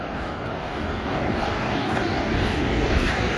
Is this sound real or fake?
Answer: fake